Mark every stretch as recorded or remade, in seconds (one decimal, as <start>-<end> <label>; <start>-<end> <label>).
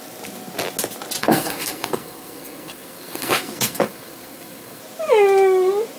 0.0-1.2 recorded; 1.2-4.8 remade; 4.8-6.0 recorded